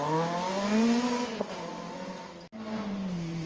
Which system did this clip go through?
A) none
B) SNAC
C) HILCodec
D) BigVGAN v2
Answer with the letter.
A